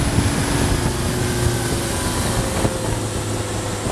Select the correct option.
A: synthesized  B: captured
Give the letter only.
B